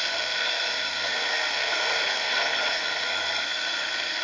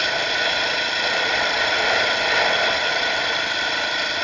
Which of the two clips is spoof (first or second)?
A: first